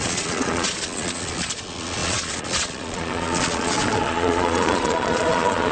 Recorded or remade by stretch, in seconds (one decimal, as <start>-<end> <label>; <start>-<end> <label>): 0.0-5.7 remade